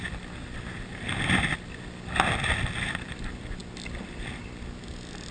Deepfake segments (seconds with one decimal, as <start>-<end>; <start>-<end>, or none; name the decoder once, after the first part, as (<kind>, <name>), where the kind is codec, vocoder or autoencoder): none